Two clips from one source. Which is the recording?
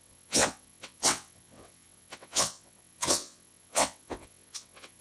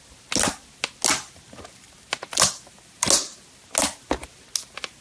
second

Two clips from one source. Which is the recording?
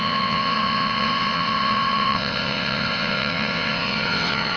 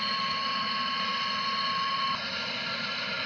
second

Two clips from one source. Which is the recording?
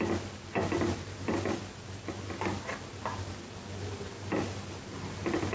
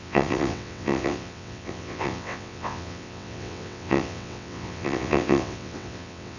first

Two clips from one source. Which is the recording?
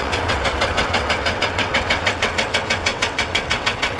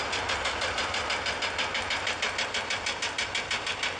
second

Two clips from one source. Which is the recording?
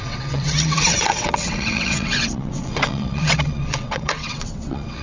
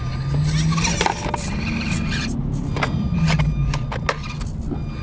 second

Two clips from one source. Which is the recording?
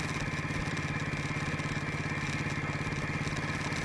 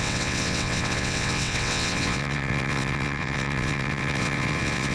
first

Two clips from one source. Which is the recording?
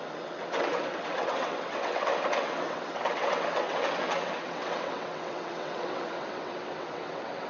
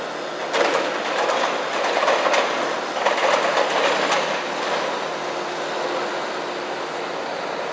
second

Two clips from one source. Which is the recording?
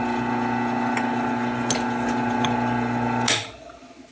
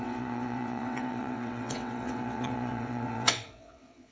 first